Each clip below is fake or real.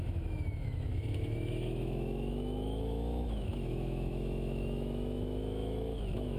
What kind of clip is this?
fake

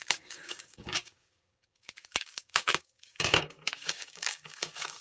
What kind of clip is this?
fake